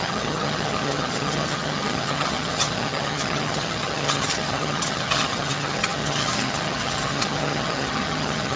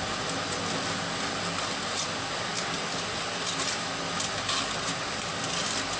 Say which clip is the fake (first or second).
first